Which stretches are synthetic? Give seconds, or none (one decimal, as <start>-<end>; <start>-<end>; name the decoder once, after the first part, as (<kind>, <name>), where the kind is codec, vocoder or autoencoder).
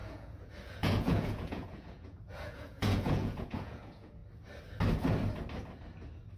0.0-4.2 (vocoder, Vocos)